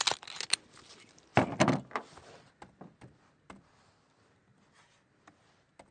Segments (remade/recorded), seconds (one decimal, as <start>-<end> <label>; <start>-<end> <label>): 0.0-5.9 recorded

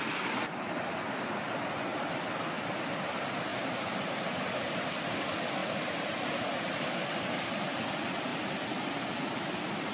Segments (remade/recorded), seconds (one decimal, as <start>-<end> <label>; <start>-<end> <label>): 0.0-3.5 recorded; 3.5-4.9 remade; 4.9-5.6 recorded; 5.6-7.0 remade; 7.0-8.3 recorded; 8.3-8.9 remade; 8.9-9.9 recorded